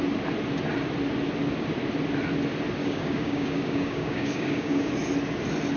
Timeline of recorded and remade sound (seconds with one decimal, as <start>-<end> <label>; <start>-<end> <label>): 0.0-2.8 recorded; 2.8-4.9 remade; 4.9-5.8 recorded